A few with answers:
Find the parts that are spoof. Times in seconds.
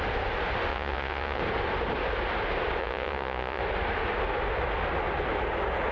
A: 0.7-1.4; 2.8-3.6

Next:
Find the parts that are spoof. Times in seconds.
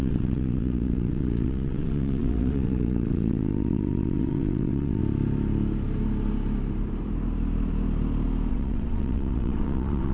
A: 0.0-5.0; 8.5-10.1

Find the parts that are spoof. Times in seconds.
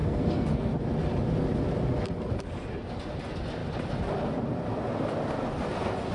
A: 0.0-0.8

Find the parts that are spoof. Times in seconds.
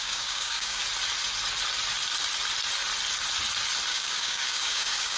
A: 0.0-0.8; 3.9-5.2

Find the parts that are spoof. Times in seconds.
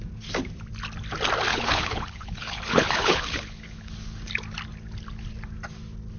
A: 1.5-3.9